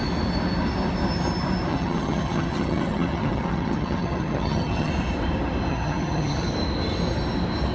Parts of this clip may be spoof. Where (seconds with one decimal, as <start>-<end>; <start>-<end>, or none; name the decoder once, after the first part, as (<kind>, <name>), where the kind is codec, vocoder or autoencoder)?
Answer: 1.7-4.9 (vocoder, HiFi-GAN); 5.7-6.5